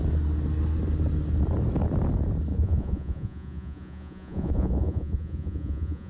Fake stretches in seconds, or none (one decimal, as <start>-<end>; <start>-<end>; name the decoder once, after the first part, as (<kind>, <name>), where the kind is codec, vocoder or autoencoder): 2.5-6.1 (vocoder, Vocos)